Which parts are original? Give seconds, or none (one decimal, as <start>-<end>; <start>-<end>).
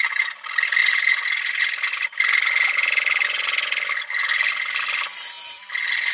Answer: 0.0-6.1